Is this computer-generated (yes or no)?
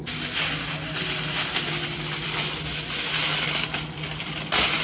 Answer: no